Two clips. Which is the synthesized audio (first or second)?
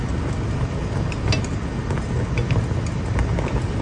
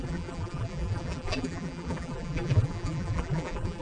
second